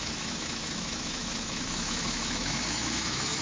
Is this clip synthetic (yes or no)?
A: yes